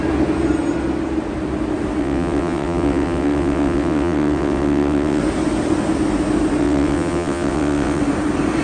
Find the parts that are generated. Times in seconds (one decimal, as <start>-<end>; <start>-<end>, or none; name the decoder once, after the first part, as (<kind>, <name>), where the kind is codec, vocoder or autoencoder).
2.0-5.2 (vocoder, WaveNeXt); 6.6-8.0